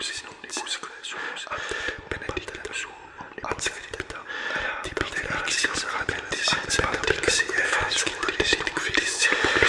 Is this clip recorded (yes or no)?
yes